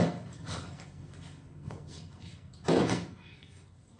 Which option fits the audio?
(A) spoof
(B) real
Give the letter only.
A